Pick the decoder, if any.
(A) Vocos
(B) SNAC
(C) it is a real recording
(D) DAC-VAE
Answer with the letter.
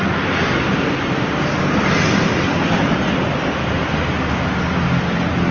C